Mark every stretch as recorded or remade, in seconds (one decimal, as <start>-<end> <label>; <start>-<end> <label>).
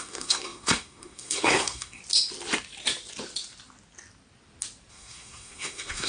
0.0-2.0 remade; 2.0-4.9 recorded; 4.9-6.1 remade